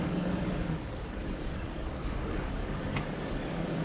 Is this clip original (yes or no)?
no